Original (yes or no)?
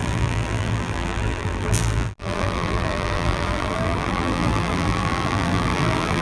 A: no